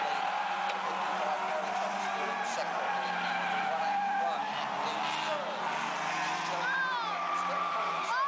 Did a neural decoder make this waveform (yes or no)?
no